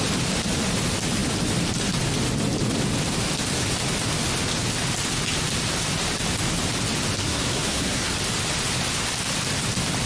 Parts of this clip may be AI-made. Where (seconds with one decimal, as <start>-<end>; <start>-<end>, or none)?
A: 7.2-8.1